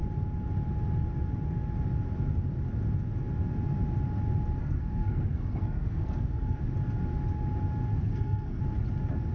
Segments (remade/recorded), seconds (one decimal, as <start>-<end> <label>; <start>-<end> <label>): 0.0-4.6 recorded; 4.6-6.6 remade; 6.6-7.9 recorded; 7.9-8.6 remade; 8.6-9.3 recorded